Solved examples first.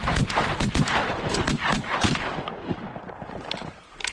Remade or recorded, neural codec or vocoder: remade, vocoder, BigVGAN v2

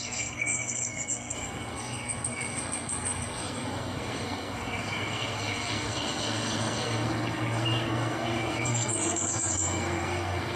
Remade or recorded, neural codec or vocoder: remade, codec, SNAC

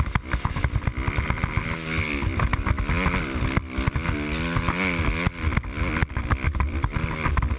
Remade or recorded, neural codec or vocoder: recorded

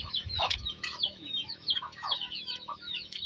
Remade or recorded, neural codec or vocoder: remade, autoencoder, DAC-VAE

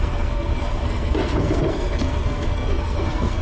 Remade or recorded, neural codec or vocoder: remade, codec, SNAC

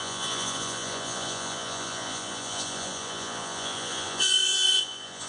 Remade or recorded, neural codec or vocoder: remade, vocoder, Vocos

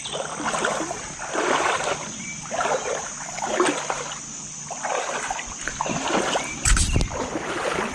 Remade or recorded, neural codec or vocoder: recorded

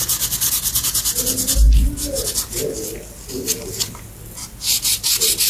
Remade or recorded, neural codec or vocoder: recorded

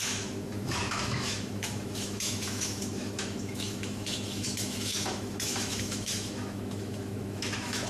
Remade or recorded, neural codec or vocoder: remade, autoencoder, DAC-VAE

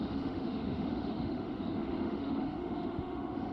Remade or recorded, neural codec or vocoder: remade, autoencoder, DAC-VAE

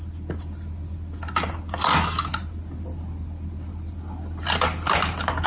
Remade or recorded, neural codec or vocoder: recorded